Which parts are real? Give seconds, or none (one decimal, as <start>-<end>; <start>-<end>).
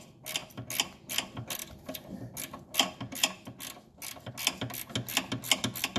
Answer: 0.0-6.0